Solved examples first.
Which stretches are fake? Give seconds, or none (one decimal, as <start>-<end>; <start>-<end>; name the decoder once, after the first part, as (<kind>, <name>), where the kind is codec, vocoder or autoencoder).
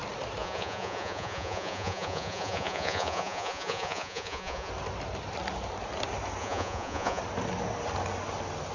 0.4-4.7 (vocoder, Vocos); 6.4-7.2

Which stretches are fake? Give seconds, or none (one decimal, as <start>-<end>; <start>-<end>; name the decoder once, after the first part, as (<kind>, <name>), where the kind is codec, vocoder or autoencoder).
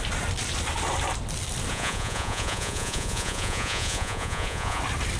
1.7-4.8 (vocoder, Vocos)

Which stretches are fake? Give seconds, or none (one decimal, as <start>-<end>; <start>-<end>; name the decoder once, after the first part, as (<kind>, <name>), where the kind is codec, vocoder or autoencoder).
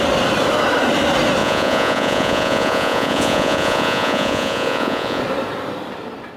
1.4-5.2 (vocoder, Vocos)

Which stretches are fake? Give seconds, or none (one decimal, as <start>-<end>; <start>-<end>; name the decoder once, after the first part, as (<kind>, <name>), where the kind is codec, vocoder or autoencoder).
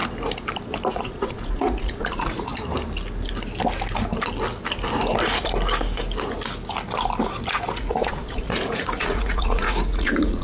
0.9-2.5 (vocoder, Vocos); 7.5-10.4